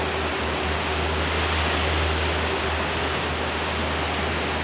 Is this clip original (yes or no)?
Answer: yes